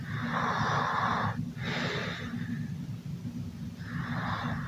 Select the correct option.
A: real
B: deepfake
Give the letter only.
A